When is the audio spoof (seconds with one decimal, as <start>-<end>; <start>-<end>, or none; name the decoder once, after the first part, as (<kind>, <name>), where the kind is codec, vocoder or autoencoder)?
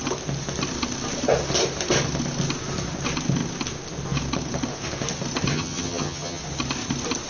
5.5-6.4 (vocoder, HiFi-GAN)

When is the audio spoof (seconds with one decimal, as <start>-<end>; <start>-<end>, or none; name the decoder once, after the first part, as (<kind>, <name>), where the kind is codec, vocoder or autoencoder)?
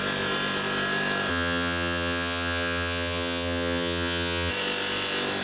1.3-4.5 (vocoder, HiFi-GAN)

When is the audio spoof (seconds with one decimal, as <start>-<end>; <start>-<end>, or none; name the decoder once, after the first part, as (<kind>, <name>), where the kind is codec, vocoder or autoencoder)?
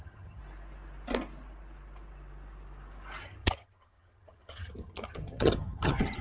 0.0-0.4 (vocoder, HiFi-GAN); 3.2-6.2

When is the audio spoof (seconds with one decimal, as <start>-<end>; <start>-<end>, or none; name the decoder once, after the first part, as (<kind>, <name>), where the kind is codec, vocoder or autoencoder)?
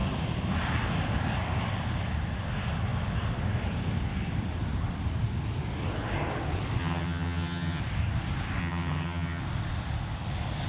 6.8-7.8 (vocoder, HiFi-GAN); 8.6-9.4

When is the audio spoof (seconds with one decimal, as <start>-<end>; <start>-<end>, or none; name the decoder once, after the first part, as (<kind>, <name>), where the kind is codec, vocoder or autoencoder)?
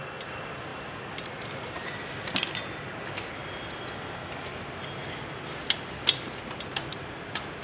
none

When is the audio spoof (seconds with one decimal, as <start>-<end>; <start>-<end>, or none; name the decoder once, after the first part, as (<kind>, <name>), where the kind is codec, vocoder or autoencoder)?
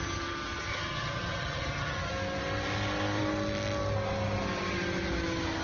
0.7-2.1 (vocoder, HiFi-GAN)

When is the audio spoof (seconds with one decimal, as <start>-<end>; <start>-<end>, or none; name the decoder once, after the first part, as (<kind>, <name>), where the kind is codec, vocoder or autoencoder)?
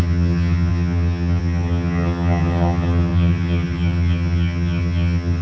0.0-5.4 (vocoder, HiFi-GAN)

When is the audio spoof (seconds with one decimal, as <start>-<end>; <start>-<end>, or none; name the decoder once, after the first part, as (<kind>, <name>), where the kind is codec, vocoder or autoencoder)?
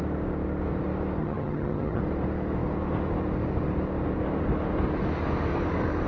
1.2-2.0 (vocoder, HiFi-GAN)